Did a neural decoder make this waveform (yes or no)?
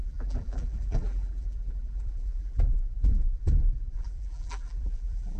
yes